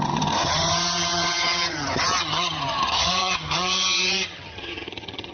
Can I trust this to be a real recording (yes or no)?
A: no